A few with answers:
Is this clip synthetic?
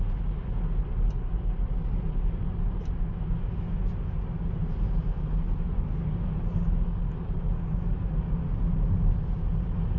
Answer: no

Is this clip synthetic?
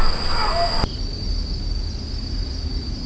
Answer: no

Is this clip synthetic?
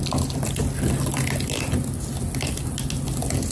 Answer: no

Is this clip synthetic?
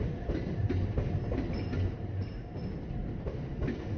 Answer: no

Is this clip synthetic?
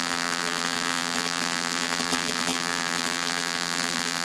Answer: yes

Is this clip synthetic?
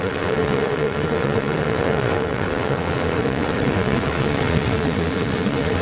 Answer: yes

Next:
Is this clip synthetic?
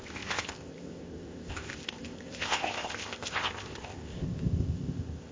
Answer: yes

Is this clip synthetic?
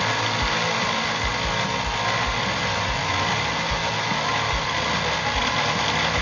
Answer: no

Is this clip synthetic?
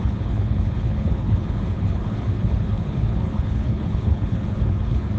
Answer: yes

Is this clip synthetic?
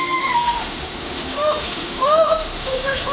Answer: yes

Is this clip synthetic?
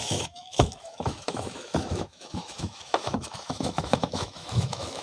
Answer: yes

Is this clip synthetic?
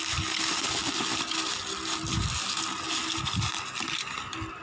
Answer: no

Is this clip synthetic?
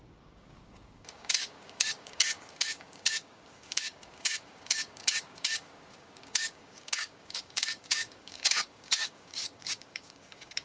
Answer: yes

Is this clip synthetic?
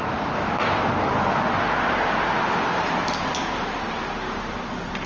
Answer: no